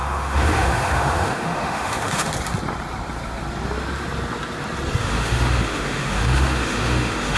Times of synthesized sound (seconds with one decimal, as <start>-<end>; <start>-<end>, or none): 0.0-2.3; 5.0-7.4